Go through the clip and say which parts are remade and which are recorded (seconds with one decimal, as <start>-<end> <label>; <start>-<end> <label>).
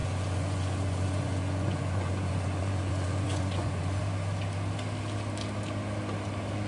0.0-4.0 remade; 4.0-6.7 recorded